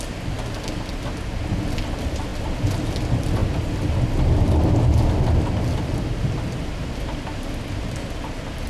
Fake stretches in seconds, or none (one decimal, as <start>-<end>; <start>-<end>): none